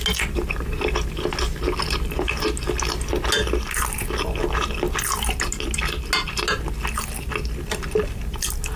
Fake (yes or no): no